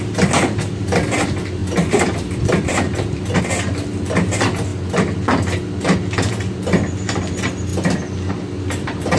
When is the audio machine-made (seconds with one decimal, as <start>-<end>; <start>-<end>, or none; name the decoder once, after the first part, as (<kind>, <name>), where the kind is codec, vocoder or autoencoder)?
1.6-3.4 (vocoder, BigVGAN v2)

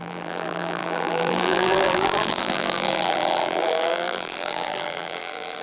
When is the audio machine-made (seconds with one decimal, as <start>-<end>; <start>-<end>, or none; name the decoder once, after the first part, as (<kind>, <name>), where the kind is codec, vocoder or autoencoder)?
0.0-5.6 (vocoder, BigVGAN v2)